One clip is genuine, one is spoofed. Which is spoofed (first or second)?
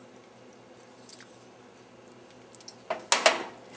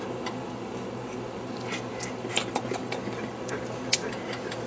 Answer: second